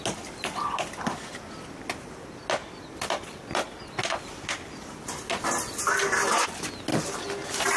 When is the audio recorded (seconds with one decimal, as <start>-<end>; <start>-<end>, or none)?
0.0-7.8